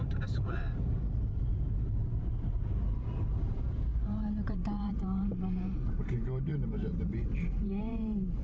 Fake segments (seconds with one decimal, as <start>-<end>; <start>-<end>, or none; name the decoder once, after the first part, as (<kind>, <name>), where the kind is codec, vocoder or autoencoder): 0.0-8.4 (vocoder, BigVGAN v2)